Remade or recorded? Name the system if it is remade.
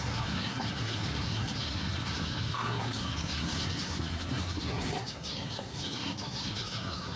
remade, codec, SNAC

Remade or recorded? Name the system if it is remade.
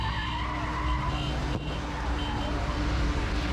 recorded